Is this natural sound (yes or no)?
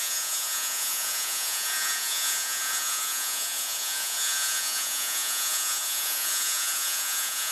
no